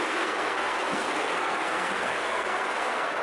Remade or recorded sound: remade